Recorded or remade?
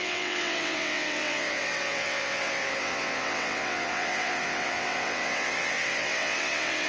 remade